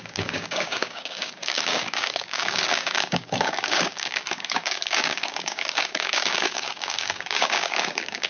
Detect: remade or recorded remade